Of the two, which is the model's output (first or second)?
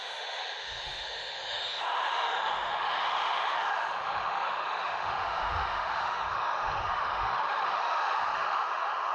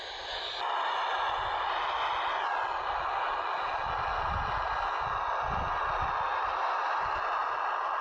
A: first